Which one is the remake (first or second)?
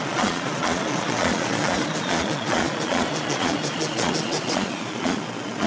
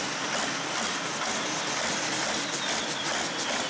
first